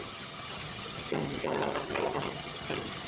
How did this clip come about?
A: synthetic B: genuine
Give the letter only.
A